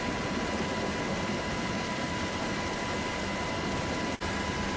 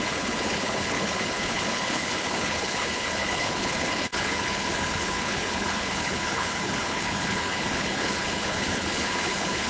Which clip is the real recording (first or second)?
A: first